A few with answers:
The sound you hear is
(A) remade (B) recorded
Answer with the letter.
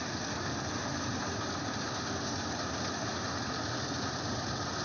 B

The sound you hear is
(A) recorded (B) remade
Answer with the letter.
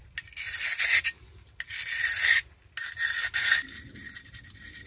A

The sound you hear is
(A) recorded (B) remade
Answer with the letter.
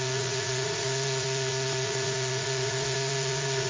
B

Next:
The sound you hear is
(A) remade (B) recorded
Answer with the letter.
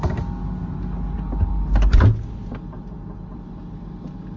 B